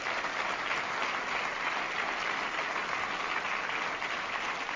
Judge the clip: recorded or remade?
recorded